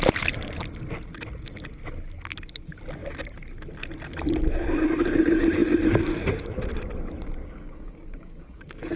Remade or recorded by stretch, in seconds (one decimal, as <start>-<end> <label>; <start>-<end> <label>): 0.0-7.4 recorded; 7.4-9.0 remade